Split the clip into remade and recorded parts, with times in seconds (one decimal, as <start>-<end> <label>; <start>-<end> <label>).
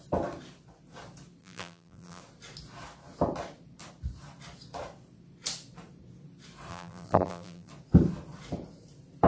0.0-1.4 recorded; 1.4-2.2 remade; 2.2-6.7 recorded; 6.7-7.7 remade; 7.7-9.3 recorded